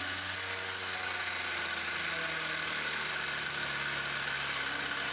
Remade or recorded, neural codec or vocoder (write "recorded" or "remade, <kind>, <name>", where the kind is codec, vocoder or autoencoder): recorded